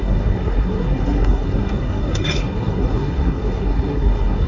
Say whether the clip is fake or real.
fake